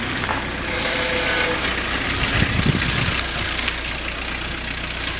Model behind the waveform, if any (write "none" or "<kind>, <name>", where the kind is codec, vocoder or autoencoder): none